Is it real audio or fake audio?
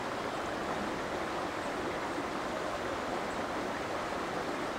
real